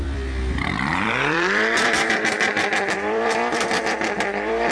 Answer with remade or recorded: remade